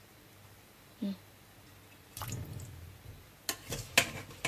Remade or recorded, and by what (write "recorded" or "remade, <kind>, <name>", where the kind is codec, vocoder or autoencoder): recorded